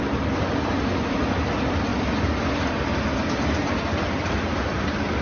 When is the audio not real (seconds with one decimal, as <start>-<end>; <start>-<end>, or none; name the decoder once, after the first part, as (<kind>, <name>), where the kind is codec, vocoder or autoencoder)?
none